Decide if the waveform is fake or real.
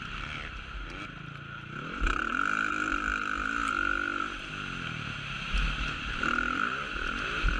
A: real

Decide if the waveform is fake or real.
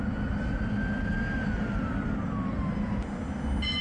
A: real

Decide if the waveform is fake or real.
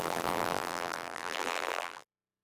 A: fake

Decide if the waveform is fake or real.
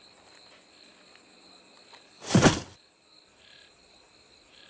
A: real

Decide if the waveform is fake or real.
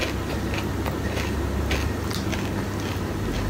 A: real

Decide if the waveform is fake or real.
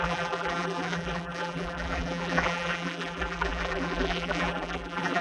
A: fake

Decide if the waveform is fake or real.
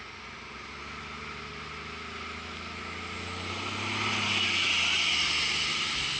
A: real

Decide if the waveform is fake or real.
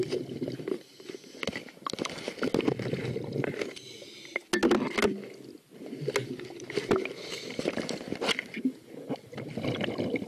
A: real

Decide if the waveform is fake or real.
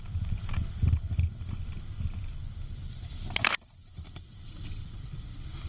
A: fake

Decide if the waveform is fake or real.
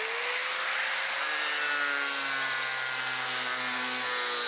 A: real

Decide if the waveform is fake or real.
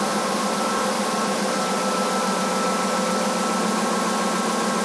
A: real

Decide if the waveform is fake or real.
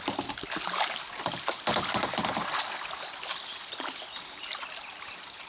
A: fake